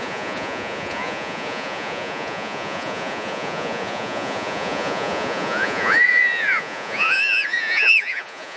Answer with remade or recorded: remade